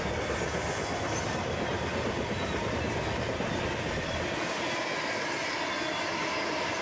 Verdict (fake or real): real